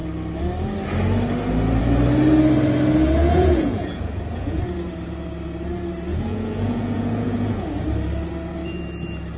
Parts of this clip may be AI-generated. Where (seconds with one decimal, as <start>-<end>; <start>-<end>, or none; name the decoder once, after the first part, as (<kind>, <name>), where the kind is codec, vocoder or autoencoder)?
3.2-4.6 (vocoder, Vocos); 6.1-7.7